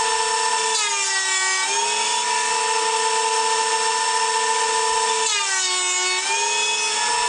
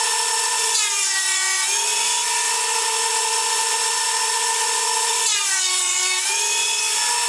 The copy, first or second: second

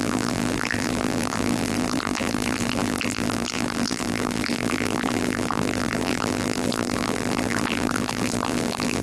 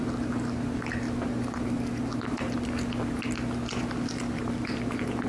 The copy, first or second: first